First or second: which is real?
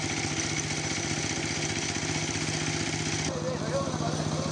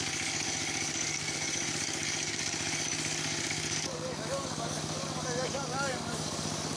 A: first